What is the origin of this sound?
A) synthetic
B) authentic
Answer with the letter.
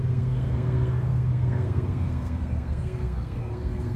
A